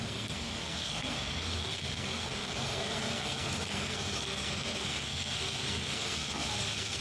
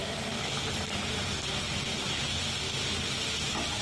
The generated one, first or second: first